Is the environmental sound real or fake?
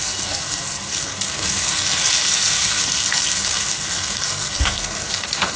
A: fake